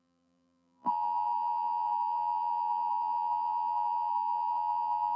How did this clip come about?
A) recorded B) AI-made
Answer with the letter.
B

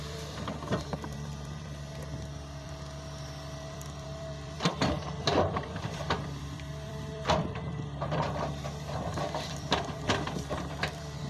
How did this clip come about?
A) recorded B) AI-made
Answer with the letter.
B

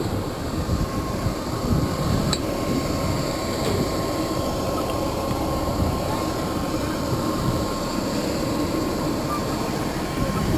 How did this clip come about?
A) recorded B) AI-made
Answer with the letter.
B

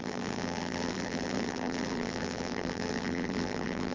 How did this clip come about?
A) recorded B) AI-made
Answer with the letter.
B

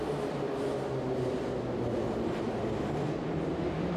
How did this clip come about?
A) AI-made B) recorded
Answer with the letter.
B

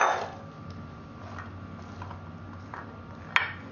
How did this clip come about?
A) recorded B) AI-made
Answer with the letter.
A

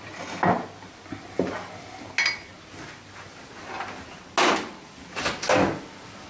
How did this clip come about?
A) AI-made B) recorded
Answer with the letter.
B